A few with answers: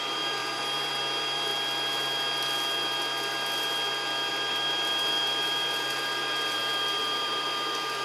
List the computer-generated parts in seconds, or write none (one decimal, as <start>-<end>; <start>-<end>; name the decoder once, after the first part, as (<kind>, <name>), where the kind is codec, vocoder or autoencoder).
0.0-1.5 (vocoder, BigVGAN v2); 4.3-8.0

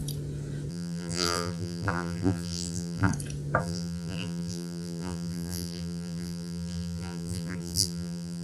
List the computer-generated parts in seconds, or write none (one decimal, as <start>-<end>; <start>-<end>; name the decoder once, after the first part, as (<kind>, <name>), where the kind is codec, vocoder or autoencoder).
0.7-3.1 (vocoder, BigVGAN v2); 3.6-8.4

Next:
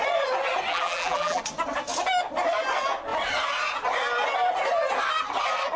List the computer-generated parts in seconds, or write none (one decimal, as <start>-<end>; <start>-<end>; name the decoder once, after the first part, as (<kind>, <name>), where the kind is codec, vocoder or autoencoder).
0.7-1.4 (vocoder, BigVGAN v2)